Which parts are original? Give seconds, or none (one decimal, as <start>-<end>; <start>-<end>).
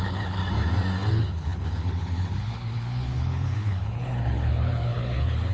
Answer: 0.4-1.1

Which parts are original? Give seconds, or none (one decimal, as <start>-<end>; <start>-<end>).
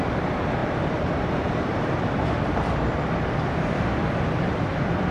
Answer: 0.0-0.6; 2.1-5.1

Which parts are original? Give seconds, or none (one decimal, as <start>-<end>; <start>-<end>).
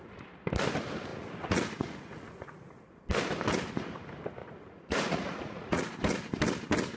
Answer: 0.0-1.1; 2.8-4.4; 6.0-7.0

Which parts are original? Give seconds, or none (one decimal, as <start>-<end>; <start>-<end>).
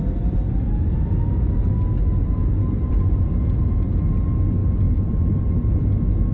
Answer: 0.0-2.6; 3.6-4.6